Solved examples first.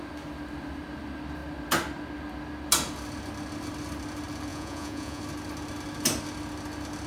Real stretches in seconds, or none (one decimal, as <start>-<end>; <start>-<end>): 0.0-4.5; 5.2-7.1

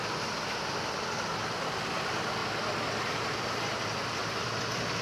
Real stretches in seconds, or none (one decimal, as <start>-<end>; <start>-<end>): 0.0-2.4; 4.5-5.0

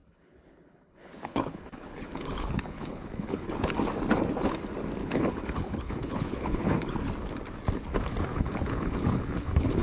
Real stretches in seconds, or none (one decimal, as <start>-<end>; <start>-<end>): 3.7-5.0; 7.1-8.3

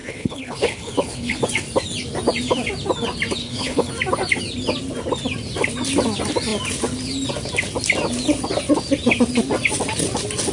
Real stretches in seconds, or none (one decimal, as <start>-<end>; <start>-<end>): 1.4-3.4; 3.9-10.5

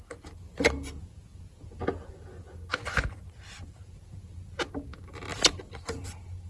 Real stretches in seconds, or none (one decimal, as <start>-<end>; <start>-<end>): 0.0-6.5